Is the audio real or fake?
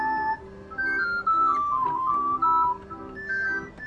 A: real